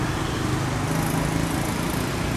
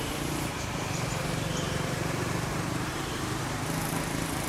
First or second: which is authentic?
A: first